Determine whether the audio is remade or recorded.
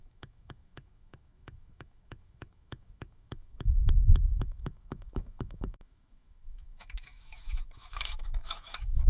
remade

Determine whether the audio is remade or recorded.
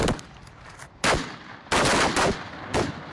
recorded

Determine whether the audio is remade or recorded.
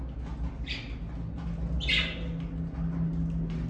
recorded